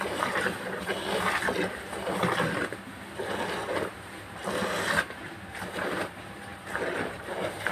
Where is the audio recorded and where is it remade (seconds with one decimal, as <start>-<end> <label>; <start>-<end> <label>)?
0.0-0.9 remade; 0.9-5.5 recorded; 5.5-7.7 remade